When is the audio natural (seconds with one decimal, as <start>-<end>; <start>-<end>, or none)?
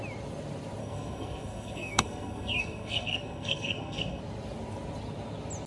0.0-0.8; 4.2-5.7